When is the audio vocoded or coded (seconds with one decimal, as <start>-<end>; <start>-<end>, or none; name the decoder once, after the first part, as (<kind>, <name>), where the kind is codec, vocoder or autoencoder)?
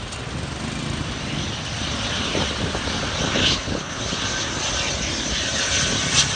3.4-4.0 (codec, HILCodec)